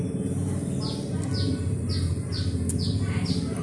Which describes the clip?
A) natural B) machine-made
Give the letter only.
A